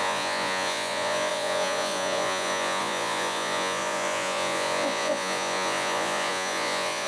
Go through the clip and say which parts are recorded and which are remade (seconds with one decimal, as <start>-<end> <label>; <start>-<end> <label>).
0.0-7.1 remade